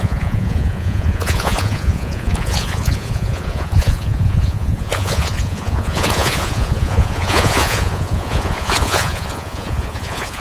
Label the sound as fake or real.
fake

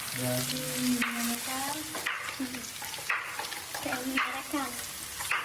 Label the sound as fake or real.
real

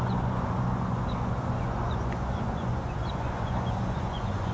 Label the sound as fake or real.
fake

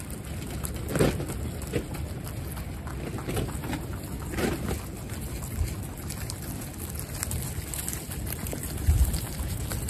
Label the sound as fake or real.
real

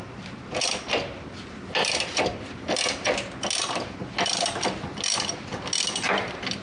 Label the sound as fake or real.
real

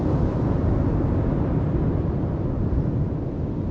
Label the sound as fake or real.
real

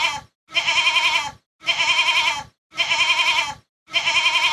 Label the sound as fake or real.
real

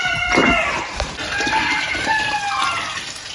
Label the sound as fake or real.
real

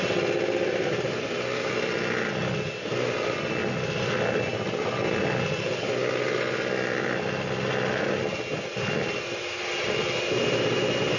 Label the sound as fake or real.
real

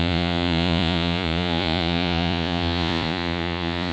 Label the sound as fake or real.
fake